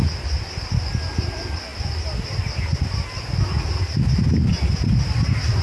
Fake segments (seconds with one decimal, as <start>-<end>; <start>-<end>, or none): none